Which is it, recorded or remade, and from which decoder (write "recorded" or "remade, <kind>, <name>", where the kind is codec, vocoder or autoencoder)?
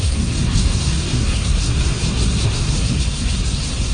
remade, codec, SNAC